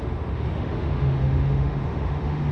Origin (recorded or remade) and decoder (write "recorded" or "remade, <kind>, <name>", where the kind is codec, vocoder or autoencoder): remade, autoencoder, DAC-VAE